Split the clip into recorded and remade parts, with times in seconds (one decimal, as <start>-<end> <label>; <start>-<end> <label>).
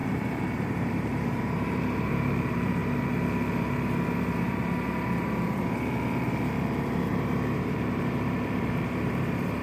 0.0-2.8 remade; 2.8-7.1 recorded; 7.1-9.6 remade